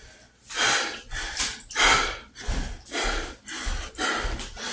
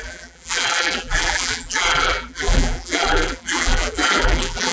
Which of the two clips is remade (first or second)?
second